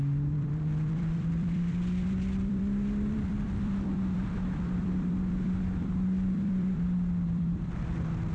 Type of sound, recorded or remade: remade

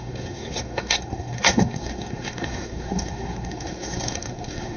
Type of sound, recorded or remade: remade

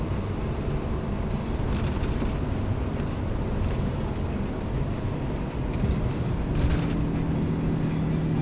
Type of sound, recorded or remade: recorded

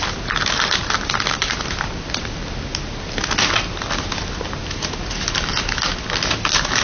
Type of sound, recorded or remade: recorded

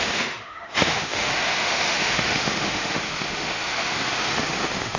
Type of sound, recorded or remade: remade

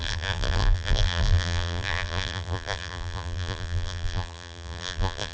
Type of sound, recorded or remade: remade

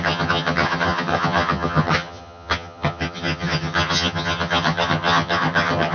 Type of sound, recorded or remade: remade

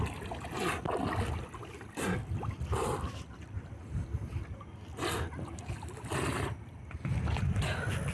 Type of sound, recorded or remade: recorded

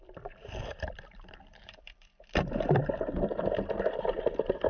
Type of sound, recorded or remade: remade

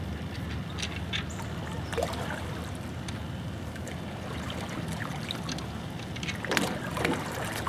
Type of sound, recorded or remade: recorded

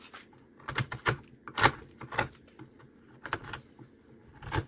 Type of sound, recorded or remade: recorded